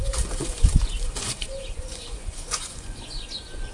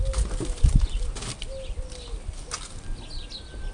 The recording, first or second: second